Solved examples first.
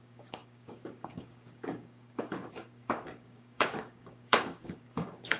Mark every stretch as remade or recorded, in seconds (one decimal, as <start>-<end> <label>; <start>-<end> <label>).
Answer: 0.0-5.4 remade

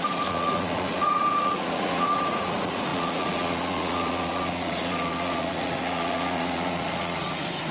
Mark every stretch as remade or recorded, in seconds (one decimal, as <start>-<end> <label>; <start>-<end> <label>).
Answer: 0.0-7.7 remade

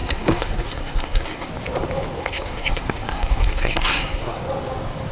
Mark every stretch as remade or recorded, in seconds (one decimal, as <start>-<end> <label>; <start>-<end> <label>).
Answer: 0.0-1.5 remade; 1.5-2.2 recorded; 2.2-4.4 remade; 4.4-5.1 recorded

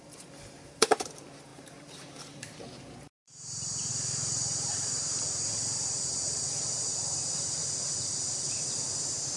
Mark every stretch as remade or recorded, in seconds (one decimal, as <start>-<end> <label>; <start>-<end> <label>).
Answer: 0.0-7.6 remade; 7.6-9.0 recorded; 9.0-9.4 remade

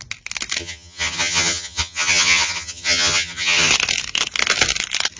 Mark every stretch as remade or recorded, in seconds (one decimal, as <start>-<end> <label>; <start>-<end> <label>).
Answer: 0.0-0.6 recorded; 0.6-3.7 remade; 3.7-5.2 recorded

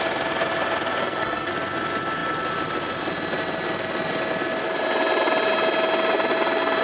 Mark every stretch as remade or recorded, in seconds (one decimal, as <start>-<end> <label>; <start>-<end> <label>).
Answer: 0.0-1.0 recorded; 1.0-1.5 remade; 1.5-6.8 recorded

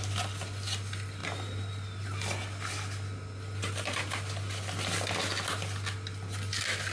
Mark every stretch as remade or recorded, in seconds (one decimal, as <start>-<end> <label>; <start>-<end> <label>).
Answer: 0.0-6.9 recorded